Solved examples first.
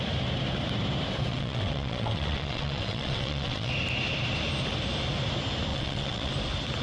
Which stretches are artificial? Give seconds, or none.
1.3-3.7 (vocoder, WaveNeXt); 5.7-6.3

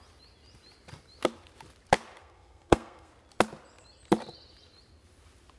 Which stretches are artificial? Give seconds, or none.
2.2-3.1 (codec, SNAC)

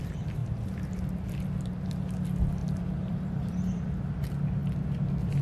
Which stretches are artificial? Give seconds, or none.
0.4-1.3 (vocoder, BigVGAN v2); 2.6-3.8

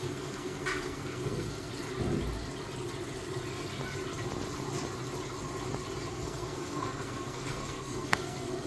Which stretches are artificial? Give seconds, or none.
0.0-1.7 (codec, SNAC); 6.1-8.7

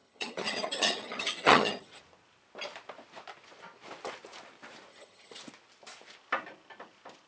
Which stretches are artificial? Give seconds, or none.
0.0-2.0 (vocoder, HiFi-GAN); 4.9-5.4

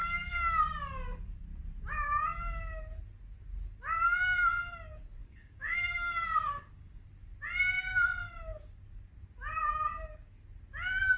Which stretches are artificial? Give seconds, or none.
0.0-0.7 (codec, DAC); 5.2-7.0

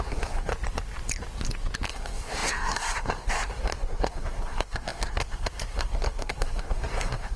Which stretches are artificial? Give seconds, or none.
0.0-0.5 (codec, SNAC); 1.9-7.4